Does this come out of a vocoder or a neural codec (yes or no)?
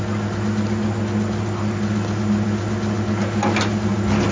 no